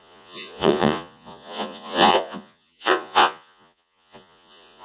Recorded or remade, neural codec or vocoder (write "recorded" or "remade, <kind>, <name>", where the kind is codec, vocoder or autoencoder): remade, vocoder, Vocos